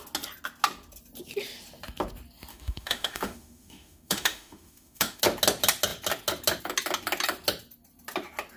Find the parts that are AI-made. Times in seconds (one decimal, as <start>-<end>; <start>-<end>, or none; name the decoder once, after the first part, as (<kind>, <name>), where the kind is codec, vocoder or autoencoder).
2.5-5.2 (autoencoder, DAC-VAE)